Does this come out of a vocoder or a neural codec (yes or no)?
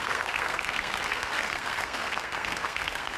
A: yes